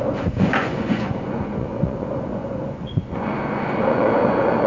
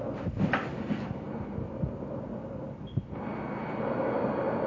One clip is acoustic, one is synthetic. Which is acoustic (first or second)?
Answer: second